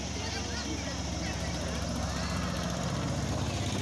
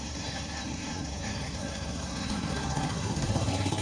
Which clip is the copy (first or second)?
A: second